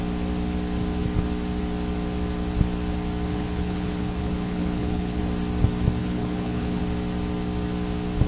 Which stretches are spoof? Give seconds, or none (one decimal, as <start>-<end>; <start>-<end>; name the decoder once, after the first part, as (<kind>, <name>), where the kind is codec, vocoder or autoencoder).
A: 3.3-5.2 (codec, HILCodec); 6.0-6.8